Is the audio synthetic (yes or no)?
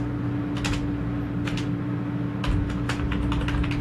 no